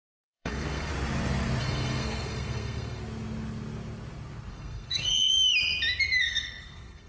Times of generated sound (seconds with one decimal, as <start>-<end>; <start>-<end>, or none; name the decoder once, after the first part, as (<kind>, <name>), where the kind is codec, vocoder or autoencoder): 0.0-0.9 (codec, SNAC); 1.6-3.0; 4.5-5.3; 6.2-7.1